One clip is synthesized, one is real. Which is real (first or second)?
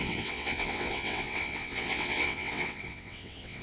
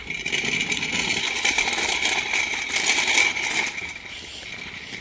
second